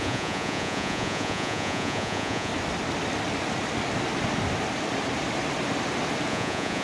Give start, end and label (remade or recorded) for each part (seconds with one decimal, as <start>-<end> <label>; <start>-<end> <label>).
0.0-2.5 remade; 2.5-6.3 recorded; 6.3-6.8 remade